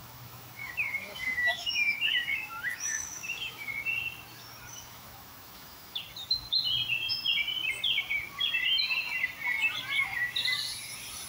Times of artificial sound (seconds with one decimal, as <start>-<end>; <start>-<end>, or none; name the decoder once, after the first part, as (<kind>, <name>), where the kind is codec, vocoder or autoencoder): 0.0-3.7 (autoencoder, DAC-VAE); 4.7-6.0